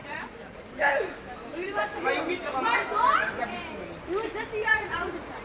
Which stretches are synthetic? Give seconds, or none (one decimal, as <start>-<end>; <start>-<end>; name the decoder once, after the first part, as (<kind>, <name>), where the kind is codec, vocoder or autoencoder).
0.0-0.6 (vocoder, Vocos); 4.6-5.4